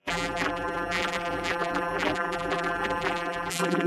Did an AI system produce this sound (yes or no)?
yes